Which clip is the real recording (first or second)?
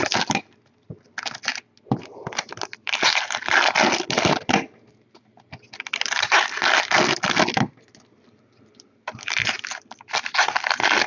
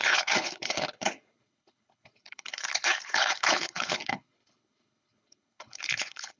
first